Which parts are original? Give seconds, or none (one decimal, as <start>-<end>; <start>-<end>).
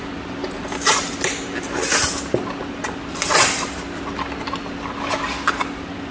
0.0-6.1